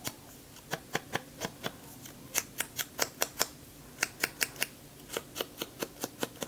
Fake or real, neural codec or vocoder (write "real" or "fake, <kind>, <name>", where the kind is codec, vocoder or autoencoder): real